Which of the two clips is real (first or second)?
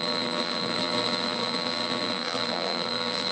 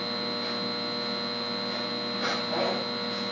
second